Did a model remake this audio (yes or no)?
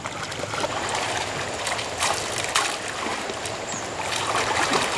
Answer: no